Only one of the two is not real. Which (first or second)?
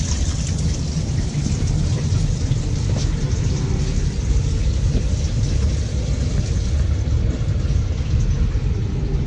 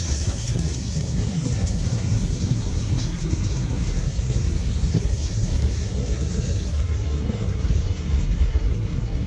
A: second